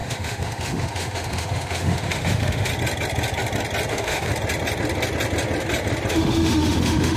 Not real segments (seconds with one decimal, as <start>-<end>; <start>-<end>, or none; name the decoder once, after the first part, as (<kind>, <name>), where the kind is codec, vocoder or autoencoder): 0.0-2.7 (autoencoder, DAC-VAE); 3.9-4.3; 6.1-7.2